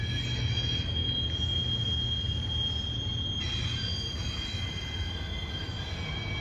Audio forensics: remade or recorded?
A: recorded